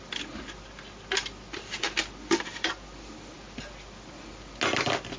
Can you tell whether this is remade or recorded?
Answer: recorded